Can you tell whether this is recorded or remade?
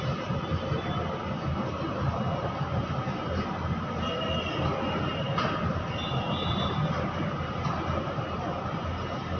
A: recorded